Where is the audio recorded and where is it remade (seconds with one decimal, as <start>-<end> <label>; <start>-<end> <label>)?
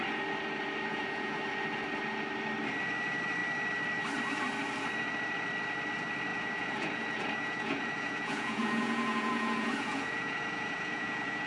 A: 0.0-0.9 recorded; 0.9-1.4 remade; 1.4-6.3 recorded; 6.3-11.5 remade